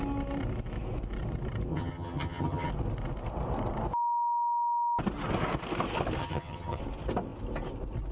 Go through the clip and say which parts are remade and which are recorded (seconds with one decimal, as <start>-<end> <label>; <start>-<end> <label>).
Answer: 0.0-1.7 recorded; 1.7-2.7 remade; 2.7-6.2 recorded; 6.2-6.8 remade; 6.8-8.1 recorded